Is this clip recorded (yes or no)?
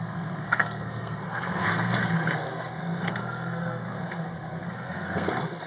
no